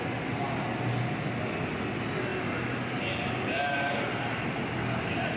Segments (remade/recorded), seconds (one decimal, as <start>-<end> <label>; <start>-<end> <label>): 0.0-5.4 recorded